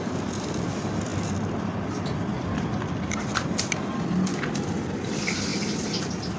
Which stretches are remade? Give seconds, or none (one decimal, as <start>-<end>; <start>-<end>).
none